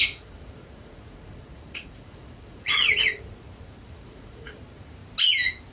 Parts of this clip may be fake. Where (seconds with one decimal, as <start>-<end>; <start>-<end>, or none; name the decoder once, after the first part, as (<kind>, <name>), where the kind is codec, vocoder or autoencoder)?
0.0-5.0 (vocoder, Vocos)